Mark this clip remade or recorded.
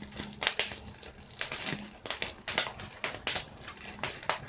recorded